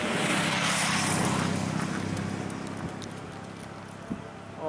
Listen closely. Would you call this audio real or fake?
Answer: real